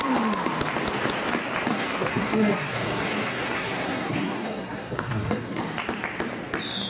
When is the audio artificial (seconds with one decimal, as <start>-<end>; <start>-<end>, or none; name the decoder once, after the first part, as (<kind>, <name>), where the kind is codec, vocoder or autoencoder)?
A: 1.7-5.6 (codec, SNAC)